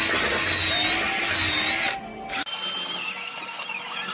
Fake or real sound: real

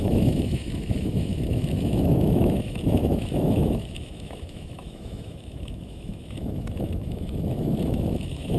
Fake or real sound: fake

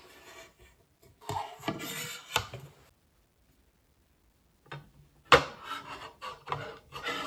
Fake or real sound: real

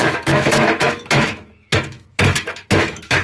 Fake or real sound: fake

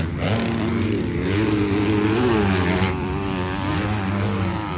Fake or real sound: real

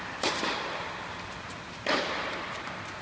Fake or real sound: real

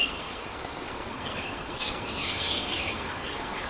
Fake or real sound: fake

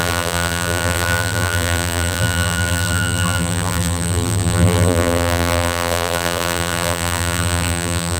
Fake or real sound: fake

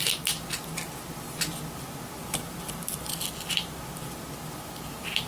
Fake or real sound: real